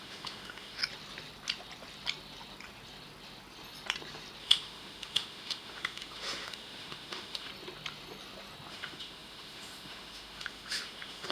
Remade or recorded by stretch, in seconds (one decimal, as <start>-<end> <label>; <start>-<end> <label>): 0.0-0.8 remade; 0.8-4.4 recorded; 4.4-7.5 remade; 7.5-8.7 recorded; 8.7-11.3 remade